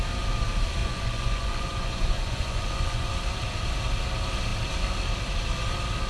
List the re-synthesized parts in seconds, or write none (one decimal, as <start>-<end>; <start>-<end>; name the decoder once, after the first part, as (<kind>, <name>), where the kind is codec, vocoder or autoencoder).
0.8-3.1 (vocoder, Vocos)